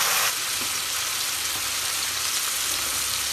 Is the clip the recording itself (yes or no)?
yes